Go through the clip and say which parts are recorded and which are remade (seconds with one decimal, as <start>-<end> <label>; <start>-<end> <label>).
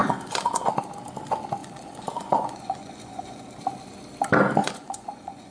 0.0-0.6 remade; 0.6-1.6 recorded; 1.6-3.4 remade; 3.4-4.6 recorded; 4.6-5.5 remade